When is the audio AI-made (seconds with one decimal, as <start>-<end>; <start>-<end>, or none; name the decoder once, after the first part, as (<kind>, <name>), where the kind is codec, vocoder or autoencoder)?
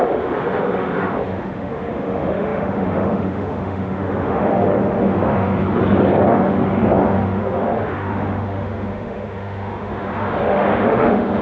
0.0-5.8 (autoencoder, DAC-VAE); 6.3-11.4